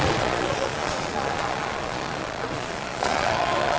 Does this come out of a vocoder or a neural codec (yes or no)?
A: yes